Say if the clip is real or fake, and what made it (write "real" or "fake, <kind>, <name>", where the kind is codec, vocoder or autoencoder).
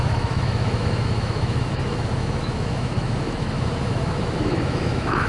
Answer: fake, autoencoder, DAC-VAE